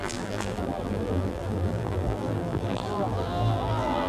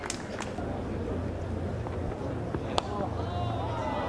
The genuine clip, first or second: second